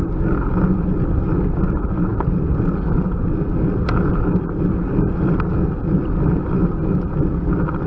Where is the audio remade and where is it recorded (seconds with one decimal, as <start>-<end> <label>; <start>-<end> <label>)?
0.0-7.9 recorded

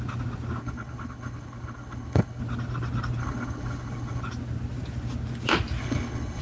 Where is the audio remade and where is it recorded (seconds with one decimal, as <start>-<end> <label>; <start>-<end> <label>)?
0.0-0.6 recorded; 0.6-2.4 remade; 2.4-3.2 recorded; 3.2-4.2 remade; 4.2-5.8 recorded; 5.8-6.4 remade

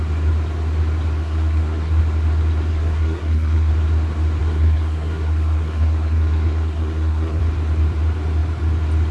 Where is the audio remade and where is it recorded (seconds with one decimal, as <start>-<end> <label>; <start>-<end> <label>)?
0.0-1.2 recorded; 1.2-2.0 remade; 2.0-2.7 recorded; 2.7-3.7 remade; 3.7-4.4 recorded; 4.4-7.4 remade; 7.4-9.1 recorded

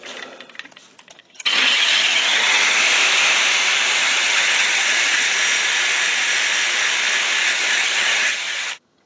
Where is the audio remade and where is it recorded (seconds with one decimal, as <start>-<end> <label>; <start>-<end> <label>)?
0.0-1.2 recorded; 1.2-2.8 remade; 2.8-4.0 recorded; 4.0-5.3 remade; 5.3-7.4 recorded; 7.4-9.1 remade

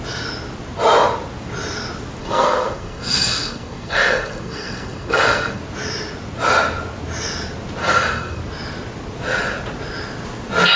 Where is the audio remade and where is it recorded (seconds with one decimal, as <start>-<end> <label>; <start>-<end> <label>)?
0.0-2.2 recorded; 2.2-5.6 remade; 5.6-7.8 recorded; 7.8-8.4 remade; 8.4-10.8 recorded

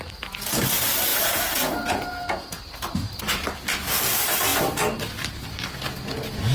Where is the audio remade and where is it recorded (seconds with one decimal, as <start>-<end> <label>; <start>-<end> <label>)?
0.0-1.1 recorded; 1.1-2.6 remade; 2.6-6.5 recorded